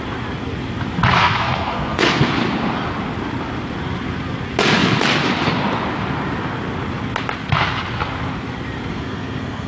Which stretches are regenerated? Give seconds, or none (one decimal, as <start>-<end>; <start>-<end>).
1.2-2.3; 8.9-9.7

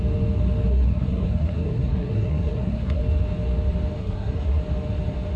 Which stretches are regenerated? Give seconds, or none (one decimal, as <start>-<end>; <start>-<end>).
0.7-3.0; 4.0-4.6

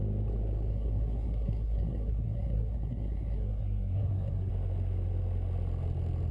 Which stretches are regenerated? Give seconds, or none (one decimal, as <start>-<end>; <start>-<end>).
0.7-4.5

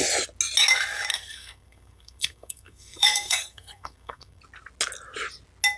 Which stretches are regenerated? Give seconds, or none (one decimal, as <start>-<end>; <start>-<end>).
1.1-4.4

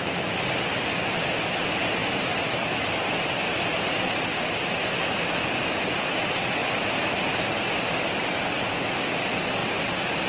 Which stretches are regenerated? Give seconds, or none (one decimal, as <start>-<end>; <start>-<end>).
none

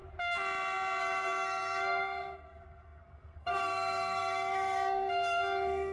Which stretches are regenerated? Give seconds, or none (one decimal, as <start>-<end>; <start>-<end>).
1.0-5.9

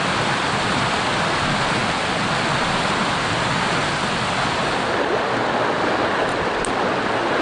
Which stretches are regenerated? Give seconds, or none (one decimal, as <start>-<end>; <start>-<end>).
none